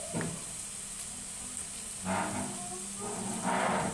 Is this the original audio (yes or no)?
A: yes